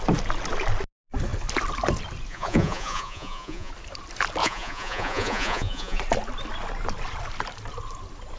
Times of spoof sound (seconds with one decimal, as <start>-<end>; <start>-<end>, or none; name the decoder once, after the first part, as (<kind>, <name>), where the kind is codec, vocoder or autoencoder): 2.3-3.7 (vocoder, Vocos); 4.4-6.0